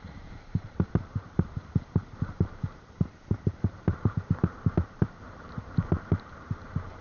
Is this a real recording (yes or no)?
no